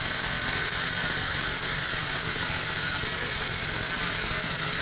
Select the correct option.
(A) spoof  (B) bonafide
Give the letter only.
A